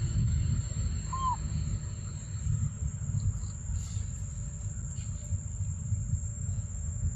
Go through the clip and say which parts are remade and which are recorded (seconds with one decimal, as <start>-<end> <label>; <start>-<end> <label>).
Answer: 0.0-6.3 recorded; 6.3-7.2 remade